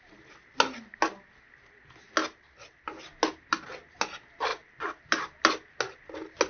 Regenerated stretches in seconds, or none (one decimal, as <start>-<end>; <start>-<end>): none